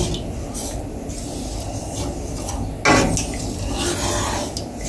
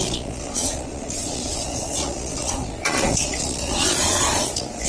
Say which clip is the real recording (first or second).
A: first